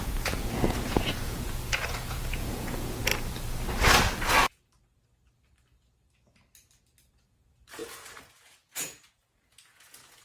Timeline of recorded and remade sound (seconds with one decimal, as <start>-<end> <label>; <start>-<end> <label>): 0.0-3.1 remade; 3.1-7.1 recorded; 7.1-10.2 remade